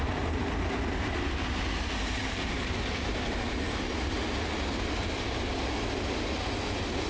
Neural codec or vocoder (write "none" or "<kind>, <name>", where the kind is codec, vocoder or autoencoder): none